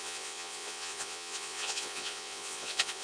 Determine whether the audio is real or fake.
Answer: fake